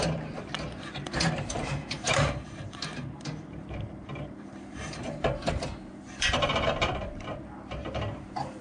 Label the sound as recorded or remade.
remade